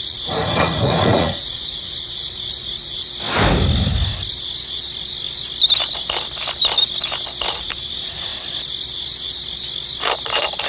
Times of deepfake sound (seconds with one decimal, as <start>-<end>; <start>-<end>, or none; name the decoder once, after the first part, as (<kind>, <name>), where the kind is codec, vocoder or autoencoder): 0.0-3.1 (vocoder, Vocos); 7.6-8.3